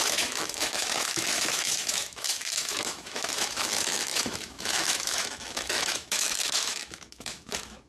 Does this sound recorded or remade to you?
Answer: remade